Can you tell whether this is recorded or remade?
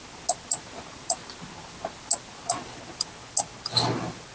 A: recorded